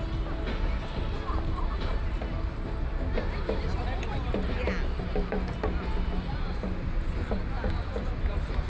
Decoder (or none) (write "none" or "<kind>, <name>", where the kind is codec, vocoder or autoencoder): none